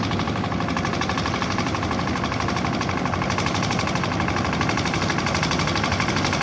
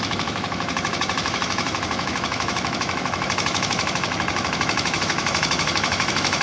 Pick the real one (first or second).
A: first